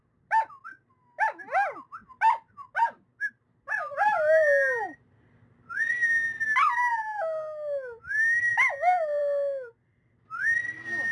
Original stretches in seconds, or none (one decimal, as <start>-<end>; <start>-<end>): 0.0-11.1